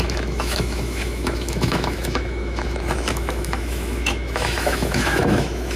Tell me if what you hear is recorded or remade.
remade